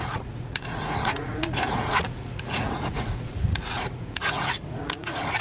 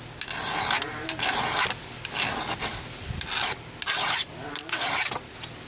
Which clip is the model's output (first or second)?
first